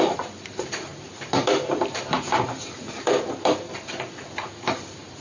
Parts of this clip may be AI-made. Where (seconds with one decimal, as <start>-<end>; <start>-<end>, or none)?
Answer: 0.0-5.2